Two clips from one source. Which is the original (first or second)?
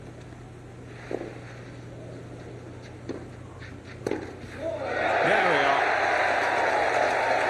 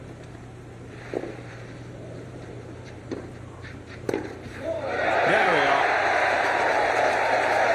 first